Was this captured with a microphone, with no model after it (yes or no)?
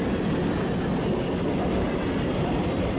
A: yes